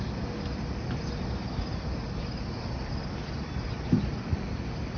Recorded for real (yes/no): yes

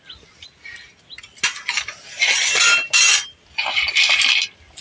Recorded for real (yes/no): yes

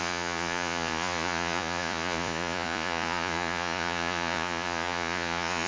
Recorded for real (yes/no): no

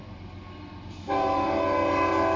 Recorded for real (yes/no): yes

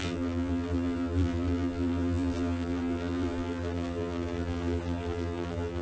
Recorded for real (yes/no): no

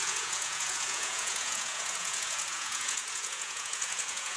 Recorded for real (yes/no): no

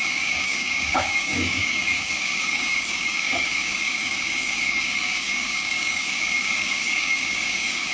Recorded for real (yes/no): no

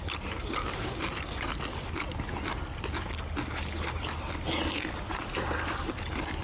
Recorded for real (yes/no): yes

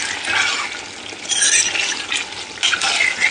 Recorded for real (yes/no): yes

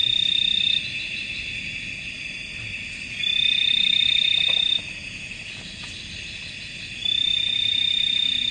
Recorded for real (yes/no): yes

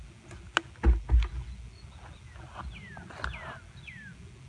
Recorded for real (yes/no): yes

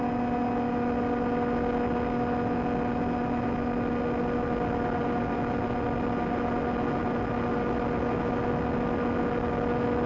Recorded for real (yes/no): yes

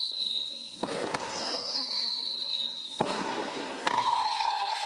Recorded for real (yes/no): no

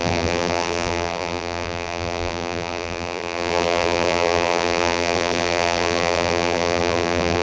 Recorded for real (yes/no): no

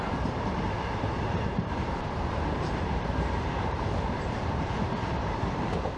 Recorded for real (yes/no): no